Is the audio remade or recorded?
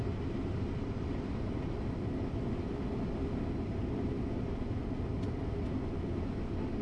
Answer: recorded